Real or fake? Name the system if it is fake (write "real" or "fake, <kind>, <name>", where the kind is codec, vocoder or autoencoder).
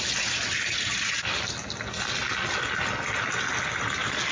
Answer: real